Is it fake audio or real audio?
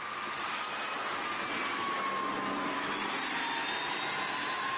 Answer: real